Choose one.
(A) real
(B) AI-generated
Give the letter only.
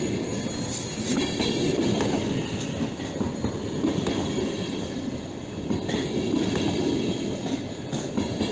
A